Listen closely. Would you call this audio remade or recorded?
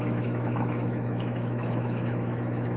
remade